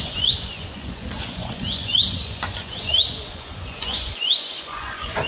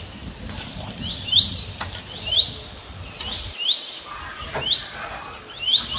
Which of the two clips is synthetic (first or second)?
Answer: first